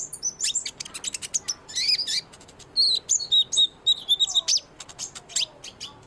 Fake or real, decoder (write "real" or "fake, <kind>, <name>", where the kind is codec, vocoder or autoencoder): real